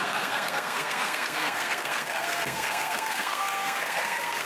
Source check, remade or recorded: remade